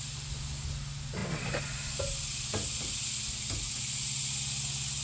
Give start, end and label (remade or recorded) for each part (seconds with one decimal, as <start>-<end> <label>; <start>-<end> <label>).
0.0-5.0 recorded